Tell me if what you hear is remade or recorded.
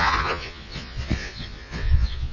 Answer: remade